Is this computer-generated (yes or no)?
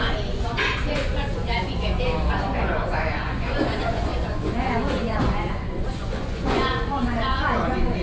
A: yes